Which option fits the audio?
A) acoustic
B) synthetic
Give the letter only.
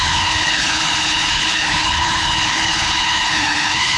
B